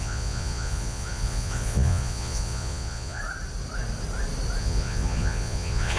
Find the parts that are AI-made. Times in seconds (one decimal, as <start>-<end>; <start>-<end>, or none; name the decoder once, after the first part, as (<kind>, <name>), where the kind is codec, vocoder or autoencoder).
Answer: 0.0-3.2 (vocoder, Vocos); 4.6-6.0